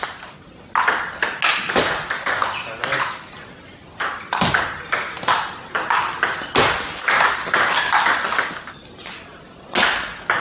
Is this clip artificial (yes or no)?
no